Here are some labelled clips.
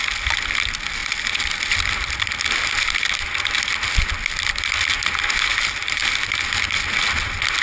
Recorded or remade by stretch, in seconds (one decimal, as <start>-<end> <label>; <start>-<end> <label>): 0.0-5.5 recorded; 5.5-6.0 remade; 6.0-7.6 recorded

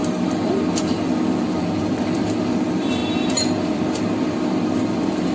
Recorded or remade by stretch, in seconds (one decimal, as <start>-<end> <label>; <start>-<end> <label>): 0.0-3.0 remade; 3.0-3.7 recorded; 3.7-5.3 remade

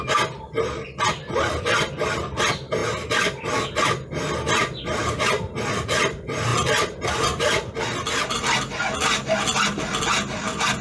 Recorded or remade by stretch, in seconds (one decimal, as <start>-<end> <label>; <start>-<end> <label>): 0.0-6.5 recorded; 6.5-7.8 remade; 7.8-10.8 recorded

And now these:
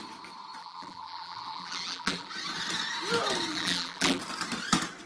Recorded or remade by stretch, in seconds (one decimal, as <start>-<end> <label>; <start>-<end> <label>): 0.0-0.6 recorded; 0.6-2.3 remade; 2.3-3.5 recorded; 3.5-4.2 remade; 4.2-5.1 recorded

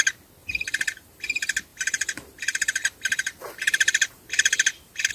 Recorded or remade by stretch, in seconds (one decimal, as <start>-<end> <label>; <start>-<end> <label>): 0.0-0.4 recorded; 0.4-1.2 remade; 1.2-1.7 recorded; 1.7-5.1 remade